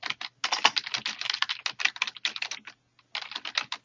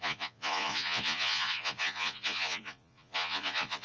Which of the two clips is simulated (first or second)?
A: second